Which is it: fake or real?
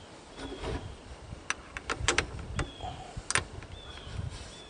real